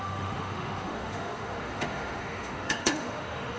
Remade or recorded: remade